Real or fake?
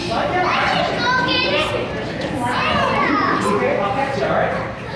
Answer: real